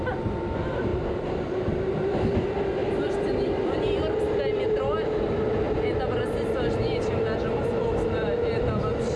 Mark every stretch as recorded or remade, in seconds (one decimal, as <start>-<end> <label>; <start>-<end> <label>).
0.0-2.8 recorded; 2.8-4.2 remade; 4.2-9.2 recorded